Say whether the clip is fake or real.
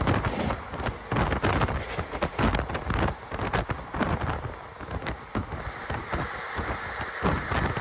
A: real